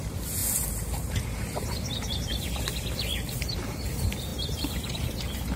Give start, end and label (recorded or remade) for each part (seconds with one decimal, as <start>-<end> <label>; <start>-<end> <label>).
0.0-0.4 remade; 0.4-1.2 recorded; 1.2-2.3 remade; 2.3-3.5 recorded; 3.5-5.6 remade